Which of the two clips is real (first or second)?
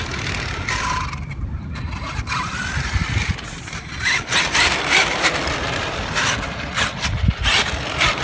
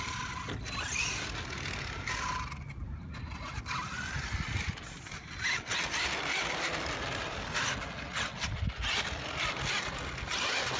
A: second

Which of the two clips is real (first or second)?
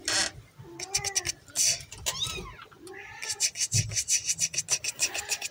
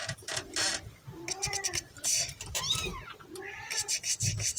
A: first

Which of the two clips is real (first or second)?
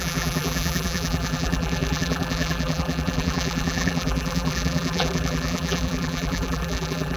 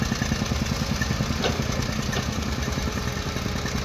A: second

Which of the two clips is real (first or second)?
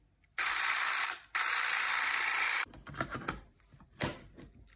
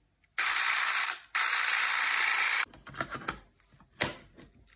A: second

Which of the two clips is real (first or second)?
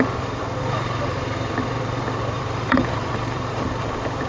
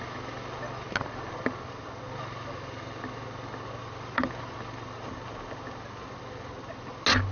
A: second